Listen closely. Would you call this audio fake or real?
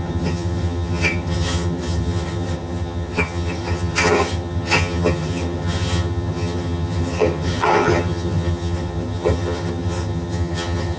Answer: fake